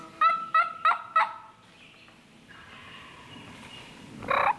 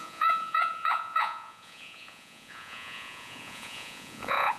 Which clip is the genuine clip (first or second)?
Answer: first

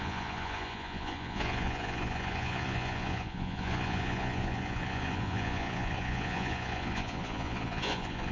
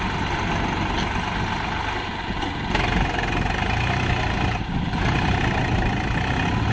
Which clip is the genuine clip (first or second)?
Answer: second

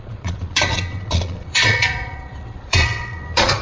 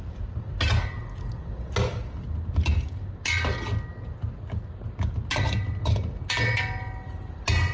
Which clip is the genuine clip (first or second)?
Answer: second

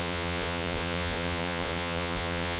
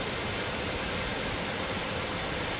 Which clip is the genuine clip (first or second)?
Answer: second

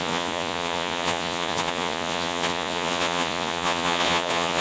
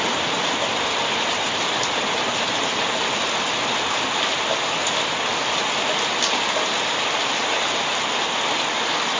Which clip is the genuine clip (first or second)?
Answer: second